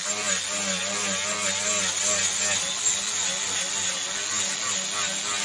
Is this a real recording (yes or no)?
yes